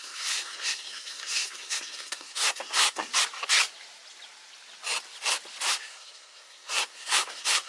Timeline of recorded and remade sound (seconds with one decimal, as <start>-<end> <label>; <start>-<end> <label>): 0.0-3.1 remade; 3.1-5.7 recorded; 5.7-7.7 remade